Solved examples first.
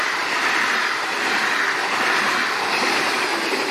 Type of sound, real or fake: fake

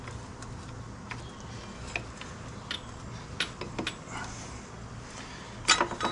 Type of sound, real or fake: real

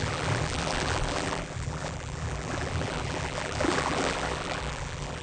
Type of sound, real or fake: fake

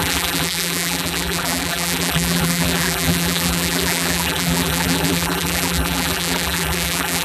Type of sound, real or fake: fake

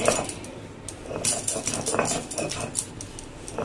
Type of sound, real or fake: real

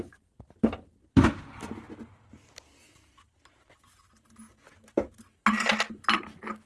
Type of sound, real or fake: real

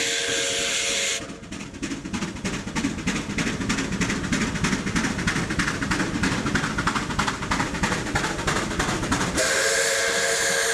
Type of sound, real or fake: real